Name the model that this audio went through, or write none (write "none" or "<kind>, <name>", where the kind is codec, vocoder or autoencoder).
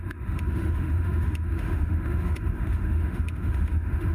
autoencoder, DAC-VAE